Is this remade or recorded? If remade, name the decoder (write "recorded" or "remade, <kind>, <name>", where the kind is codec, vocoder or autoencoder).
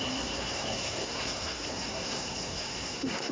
remade, codec, SNAC